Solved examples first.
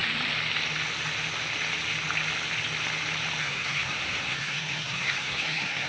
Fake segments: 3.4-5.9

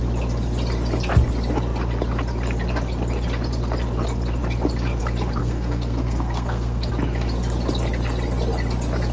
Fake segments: 5.4-6.9

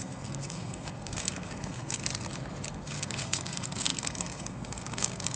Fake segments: 0.0-2.0; 2.7-5.4

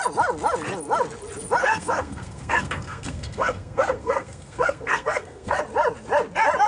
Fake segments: 1.6-5.6

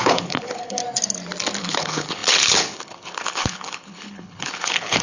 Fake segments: 0.0-0.8; 1.6-5.0

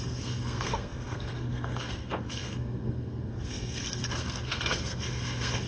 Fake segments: 0.0-5.7

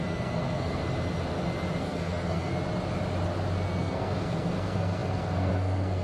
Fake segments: 0.0-0.8; 1.8-2.5; 3.8-6.0

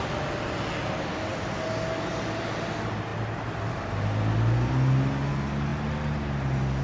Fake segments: none